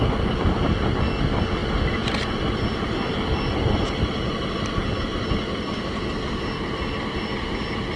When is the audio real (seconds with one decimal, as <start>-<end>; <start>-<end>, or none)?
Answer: 0.0-8.0